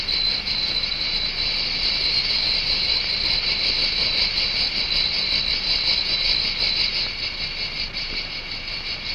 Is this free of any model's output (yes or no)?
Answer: yes